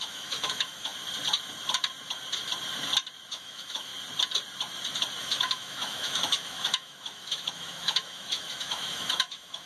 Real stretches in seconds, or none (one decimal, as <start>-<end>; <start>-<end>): 0.9-3.3; 3.9-5.2